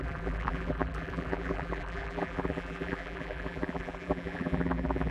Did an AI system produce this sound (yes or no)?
yes